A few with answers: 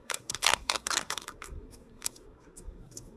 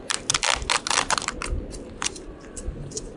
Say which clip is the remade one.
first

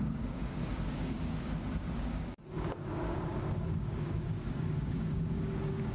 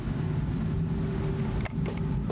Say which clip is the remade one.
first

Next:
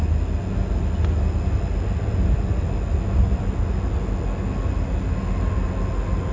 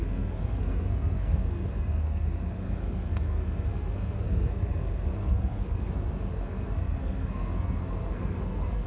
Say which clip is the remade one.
second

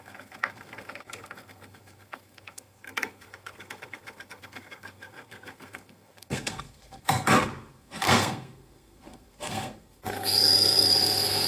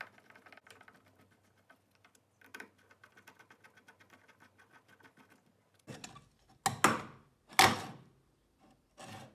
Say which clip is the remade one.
first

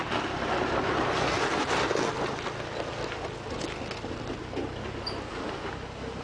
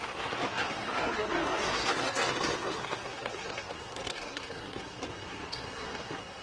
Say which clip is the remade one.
second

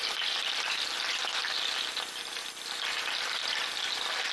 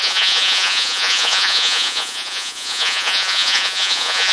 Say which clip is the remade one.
second